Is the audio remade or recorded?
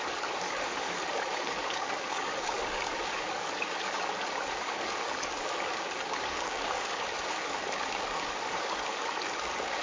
remade